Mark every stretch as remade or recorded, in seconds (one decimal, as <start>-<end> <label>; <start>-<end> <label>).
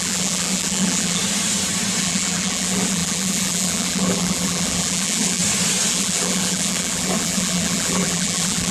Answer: 0.0-1.2 remade; 1.2-2.0 recorded; 2.0-5.4 remade; 5.4-5.9 recorded; 5.9-8.7 remade